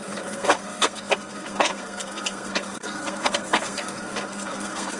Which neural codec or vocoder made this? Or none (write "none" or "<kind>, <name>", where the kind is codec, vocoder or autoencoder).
codec, SNAC